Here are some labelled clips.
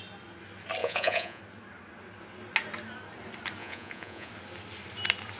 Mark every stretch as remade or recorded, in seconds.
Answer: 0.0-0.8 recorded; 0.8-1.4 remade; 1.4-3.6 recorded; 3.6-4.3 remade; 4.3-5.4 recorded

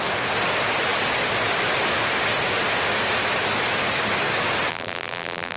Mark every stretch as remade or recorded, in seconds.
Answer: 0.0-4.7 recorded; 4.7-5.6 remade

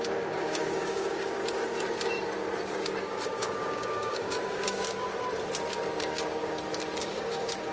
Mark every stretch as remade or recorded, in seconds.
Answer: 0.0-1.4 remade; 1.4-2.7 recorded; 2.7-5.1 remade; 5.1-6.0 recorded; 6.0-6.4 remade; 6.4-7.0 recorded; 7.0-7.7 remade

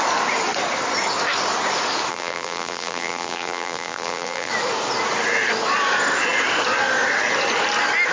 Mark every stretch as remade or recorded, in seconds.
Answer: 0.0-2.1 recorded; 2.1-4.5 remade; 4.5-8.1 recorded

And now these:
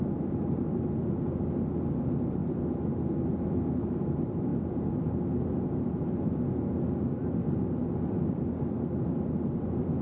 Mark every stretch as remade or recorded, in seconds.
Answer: 0.0-10.0 recorded

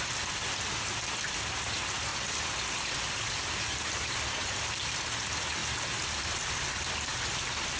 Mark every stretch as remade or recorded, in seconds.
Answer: 0.0-2.1 recorded; 2.1-3.3 remade; 3.3-7.8 recorded

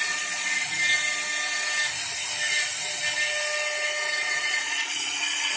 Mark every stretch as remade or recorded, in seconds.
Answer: 0.0-0.8 remade; 0.8-4.2 recorded; 4.2-5.6 remade

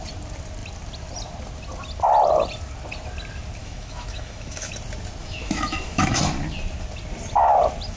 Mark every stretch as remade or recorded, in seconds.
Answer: 0.0-3.6 recorded; 3.6-4.7 remade; 4.7-5.2 recorded; 5.2-6.2 remade; 6.2-8.0 recorded